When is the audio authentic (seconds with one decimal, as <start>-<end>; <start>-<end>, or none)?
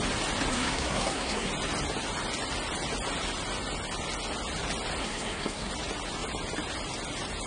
0.0-0.5; 1.5-5.0; 5.7-7.5